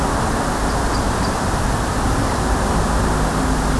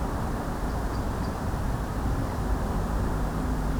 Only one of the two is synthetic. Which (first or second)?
second